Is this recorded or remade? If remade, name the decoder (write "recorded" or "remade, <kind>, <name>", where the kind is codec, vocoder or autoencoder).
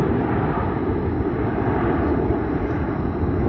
recorded